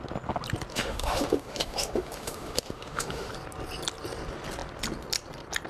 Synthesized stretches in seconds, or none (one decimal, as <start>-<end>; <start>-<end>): 0.7-3.3